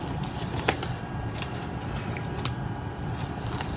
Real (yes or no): no